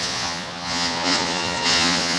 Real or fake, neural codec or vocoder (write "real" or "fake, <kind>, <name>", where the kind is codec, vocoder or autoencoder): fake, vocoder, Vocos